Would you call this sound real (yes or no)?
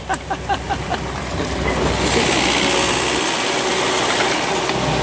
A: yes